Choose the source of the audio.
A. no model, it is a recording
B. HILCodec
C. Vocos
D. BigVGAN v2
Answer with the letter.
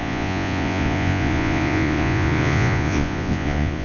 C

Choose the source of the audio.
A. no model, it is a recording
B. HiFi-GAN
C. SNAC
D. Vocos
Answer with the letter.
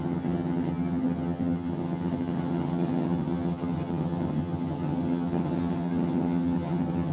B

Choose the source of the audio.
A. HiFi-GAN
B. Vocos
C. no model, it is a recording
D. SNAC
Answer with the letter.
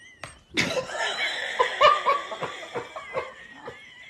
C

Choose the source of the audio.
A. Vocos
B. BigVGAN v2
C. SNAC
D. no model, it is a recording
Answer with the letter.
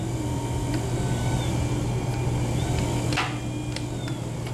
D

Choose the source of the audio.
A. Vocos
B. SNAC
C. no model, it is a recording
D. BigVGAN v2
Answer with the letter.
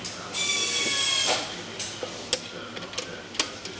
C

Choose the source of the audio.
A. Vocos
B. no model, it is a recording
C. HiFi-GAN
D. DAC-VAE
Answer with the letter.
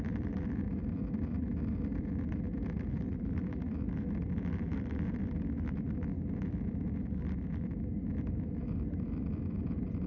B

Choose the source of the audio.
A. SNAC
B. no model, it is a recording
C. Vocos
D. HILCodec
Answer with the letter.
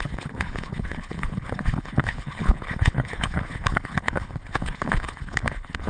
D